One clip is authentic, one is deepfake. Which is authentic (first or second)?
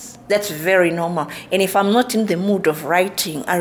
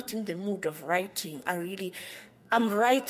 first